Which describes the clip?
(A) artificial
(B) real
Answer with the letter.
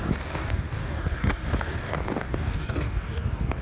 A